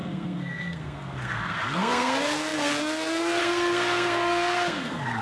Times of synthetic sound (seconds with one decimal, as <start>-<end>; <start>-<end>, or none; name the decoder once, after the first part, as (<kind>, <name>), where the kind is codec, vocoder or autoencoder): 0.0-5.2 (codec, SNAC)